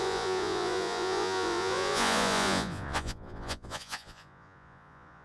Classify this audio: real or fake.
fake